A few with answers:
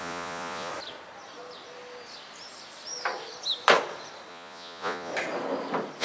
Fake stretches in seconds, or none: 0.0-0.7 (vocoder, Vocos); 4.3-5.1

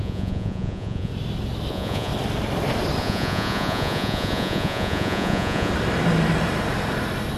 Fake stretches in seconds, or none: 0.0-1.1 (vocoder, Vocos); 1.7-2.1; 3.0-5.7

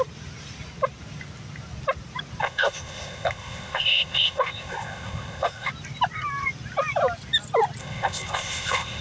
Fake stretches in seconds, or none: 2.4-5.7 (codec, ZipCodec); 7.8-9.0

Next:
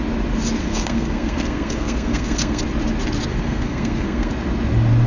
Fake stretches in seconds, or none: 0.6-2.6 (codec, SNAC); 3.3-4.3

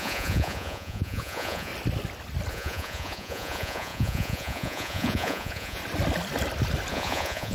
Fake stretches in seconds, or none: 0.0-1.7 (vocoder, Vocos); 2.5-5.8; 6.9-7.5